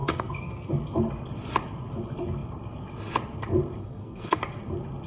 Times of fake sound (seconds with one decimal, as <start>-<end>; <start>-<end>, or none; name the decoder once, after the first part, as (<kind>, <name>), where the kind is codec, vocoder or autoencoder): 0.0-0.7 (codec, SNAC); 3.8-4.4